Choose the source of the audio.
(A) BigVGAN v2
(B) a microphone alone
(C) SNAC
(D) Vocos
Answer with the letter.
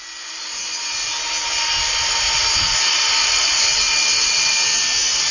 B